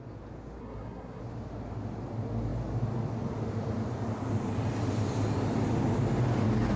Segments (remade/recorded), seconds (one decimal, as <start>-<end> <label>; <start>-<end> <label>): 0.0-0.6 recorded; 0.6-1.2 remade; 1.2-6.8 recorded